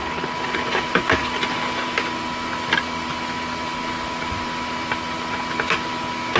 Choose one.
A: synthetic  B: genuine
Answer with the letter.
B